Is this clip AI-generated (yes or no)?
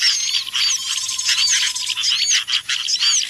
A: no